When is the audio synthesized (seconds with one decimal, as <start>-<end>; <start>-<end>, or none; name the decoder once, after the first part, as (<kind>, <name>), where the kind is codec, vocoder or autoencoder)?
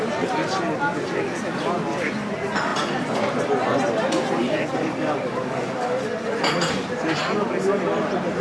4.4-6.3 (codec, DAC)